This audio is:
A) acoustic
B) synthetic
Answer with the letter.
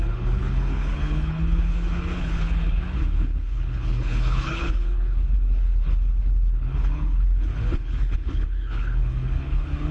B